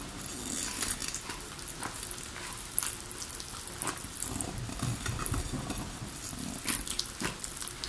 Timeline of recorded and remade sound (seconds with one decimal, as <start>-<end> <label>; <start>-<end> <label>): 0.0-7.9 recorded

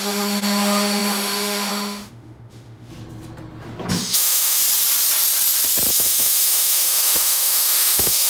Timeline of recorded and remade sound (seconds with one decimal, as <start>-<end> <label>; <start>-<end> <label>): 0.0-2.9 remade; 2.9-3.9 recorded; 3.9-4.6 remade; 4.6-5.9 recorded; 5.9-8.3 remade